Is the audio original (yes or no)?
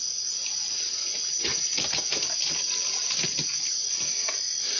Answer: yes